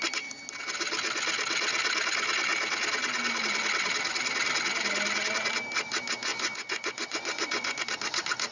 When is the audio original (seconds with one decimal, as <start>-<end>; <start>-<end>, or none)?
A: 0.0-6.3; 7.8-8.5